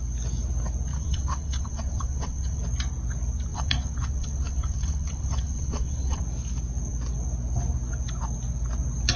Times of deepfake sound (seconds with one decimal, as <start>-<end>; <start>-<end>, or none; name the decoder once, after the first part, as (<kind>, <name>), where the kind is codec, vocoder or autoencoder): 0.9-2.6 (vocoder, WaveNeXt); 3.5-6.2